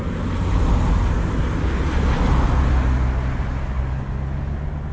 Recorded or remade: recorded